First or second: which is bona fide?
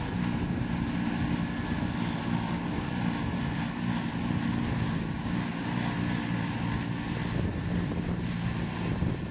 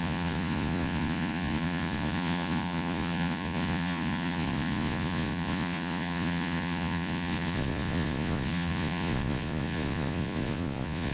first